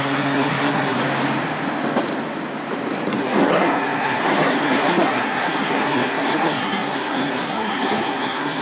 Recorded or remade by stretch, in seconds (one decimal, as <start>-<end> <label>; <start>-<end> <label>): 0.0-1.0 remade; 1.0-3.1 recorded; 3.1-8.6 remade